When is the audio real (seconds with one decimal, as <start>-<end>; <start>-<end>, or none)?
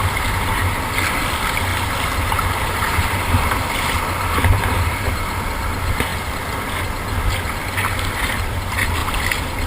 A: 6.1-7.9; 9.0-9.7